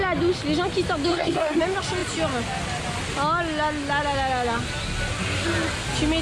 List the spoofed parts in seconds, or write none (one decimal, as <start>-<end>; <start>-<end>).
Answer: 1.1-1.6